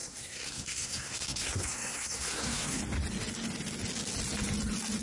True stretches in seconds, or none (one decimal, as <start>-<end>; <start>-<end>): 2.8-5.0